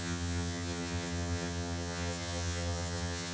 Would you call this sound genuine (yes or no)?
no